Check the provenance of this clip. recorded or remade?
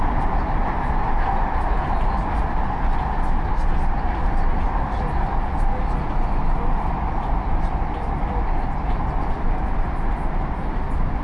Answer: recorded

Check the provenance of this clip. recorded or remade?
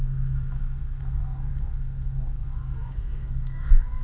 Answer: remade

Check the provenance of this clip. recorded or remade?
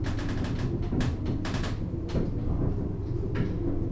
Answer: recorded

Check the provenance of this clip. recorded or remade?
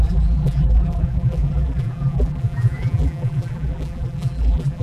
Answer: remade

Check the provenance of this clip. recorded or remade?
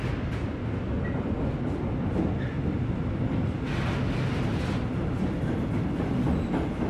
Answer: recorded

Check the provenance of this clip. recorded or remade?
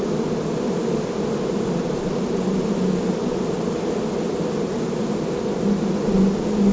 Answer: recorded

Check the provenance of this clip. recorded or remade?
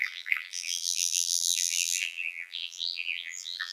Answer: remade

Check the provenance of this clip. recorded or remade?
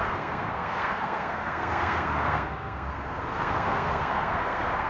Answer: remade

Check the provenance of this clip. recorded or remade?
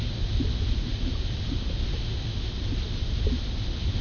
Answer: recorded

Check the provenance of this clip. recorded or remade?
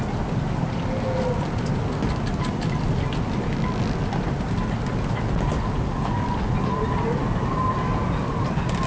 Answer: recorded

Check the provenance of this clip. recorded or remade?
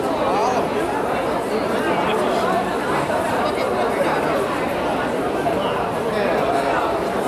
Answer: recorded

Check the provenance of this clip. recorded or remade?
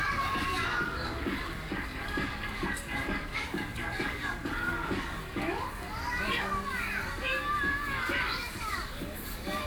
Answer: remade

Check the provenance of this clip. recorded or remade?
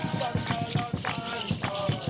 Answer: recorded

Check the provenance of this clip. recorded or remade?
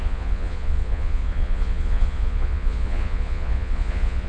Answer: remade